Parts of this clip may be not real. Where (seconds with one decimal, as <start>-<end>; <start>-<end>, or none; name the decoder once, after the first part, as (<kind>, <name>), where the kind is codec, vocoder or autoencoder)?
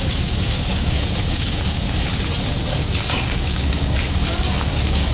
0.0-2.1 (codec, DAC); 2.6-5.1